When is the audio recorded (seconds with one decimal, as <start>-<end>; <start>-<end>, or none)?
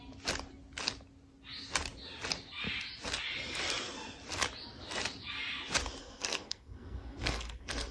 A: 0.0-6.0